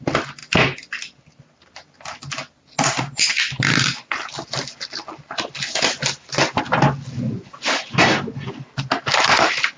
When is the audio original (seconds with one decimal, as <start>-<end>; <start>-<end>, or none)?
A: 0.0-9.8